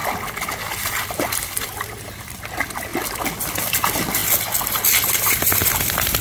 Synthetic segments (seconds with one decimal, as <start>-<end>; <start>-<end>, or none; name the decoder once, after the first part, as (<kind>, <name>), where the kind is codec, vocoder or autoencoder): 0.8-2.9 (vocoder, BigVGAN v2); 3.6-4.2; 5.0-6.2